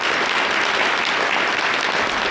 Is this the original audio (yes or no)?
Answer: yes